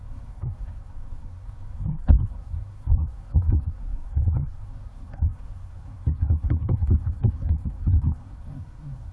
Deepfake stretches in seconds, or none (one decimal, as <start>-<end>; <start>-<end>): 0.0-9.1